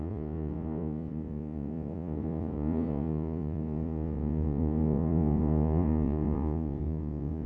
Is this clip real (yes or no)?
no